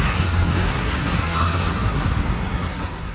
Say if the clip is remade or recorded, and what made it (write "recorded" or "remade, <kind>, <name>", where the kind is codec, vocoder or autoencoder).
remade, codec, SNAC